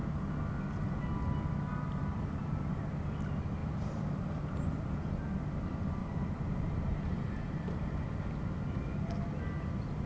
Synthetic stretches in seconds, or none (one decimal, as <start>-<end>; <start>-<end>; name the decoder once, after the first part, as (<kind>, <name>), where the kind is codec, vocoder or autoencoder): 3.6-4.9 (vocoder, BigVGAN v2); 6.0-8.2